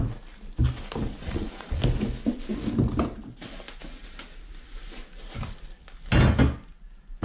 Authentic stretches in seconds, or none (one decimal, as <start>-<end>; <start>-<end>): 0.0-1.2; 1.8-7.2